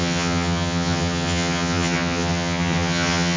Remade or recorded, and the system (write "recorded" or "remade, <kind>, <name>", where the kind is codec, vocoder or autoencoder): remade, vocoder, HiFi-GAN